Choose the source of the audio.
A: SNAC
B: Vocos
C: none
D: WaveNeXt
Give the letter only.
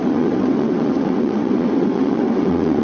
D